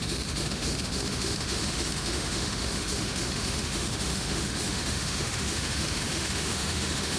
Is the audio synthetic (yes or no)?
yes